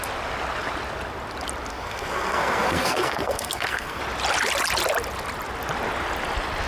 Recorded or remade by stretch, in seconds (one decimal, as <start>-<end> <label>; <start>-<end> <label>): 0.0-1.7 recorded; 1.7-4.0 remade; 4.0-6.7 recorded